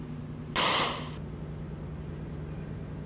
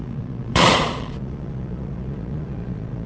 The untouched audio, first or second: first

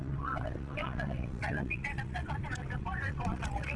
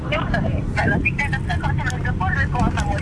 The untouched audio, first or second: second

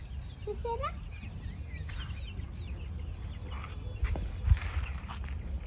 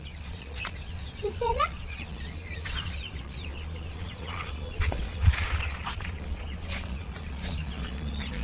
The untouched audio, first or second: first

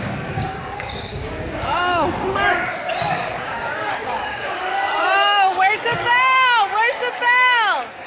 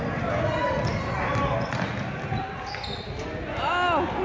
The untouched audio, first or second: second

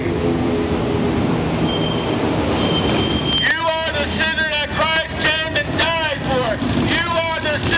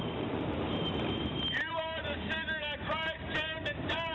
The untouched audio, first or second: first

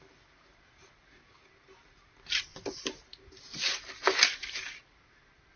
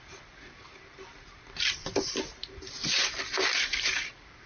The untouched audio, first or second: first